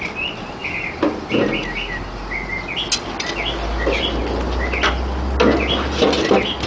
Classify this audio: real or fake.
real